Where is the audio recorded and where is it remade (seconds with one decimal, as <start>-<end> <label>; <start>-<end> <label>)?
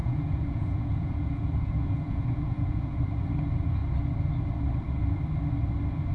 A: 0.0-3.0 remade; 3.0-6.1 recorded